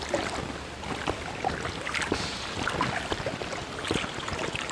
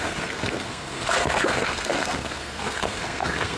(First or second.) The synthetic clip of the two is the second